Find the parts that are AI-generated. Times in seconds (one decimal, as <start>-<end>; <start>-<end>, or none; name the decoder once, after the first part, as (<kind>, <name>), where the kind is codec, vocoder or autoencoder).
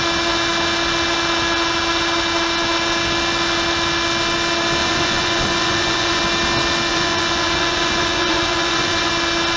4.8-6.2 (vocoder, Vocos); 6.9-9.1